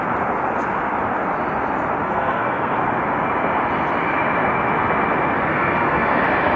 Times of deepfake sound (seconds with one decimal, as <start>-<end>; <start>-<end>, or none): 2.0-2.7; 5.5-6.1